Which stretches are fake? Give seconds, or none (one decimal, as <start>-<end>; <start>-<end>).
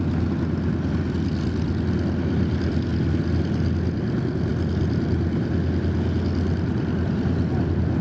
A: none